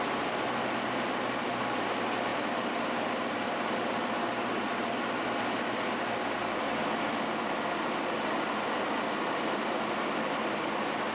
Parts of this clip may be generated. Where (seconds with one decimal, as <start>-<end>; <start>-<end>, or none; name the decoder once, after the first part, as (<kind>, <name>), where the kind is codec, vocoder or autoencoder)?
2.3-3.7 (vocoder, BigVGAN v2)